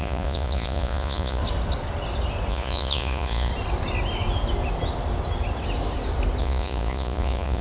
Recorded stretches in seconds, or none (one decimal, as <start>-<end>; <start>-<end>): 1.4-2.5; 3.5-6.4